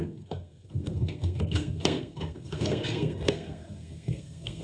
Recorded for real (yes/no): no